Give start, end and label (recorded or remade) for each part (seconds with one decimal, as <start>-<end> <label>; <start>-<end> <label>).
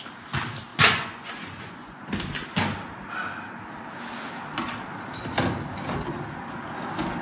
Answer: 0.0-0.7 recorded; 0.7-2.0 remade; 2.0-7.2 recorded